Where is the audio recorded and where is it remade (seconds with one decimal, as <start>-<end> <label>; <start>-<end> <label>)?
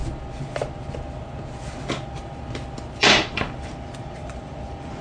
0.0-3.0 recorded; 3.0-5.0 remade